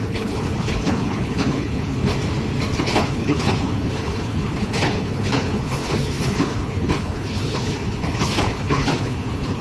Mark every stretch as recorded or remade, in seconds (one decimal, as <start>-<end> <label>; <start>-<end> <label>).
0.0-2.1 remade; 2.1-2.8 recorded; 2.8-9.6 remade